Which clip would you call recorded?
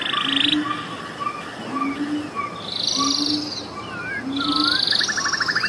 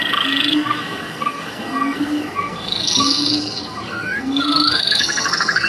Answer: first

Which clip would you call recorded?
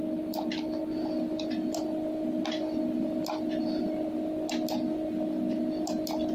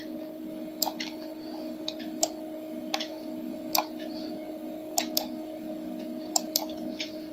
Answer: first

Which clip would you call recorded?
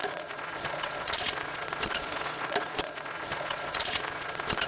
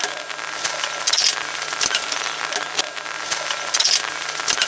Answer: second